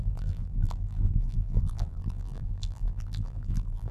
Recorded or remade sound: remade